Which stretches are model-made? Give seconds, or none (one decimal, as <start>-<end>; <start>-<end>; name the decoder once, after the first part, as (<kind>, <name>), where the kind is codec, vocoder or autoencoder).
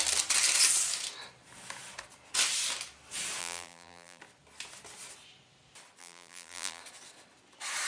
3.4-4.2 (vocoder, BigVGAN v2); 6.0-6.8